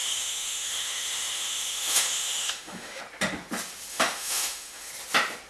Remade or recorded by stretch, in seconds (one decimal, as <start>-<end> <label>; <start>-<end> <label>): 0.0-3.0 remade; 3.0-3.9 recorded; 3.9-4.9 remade; 4.9-5.5 recorded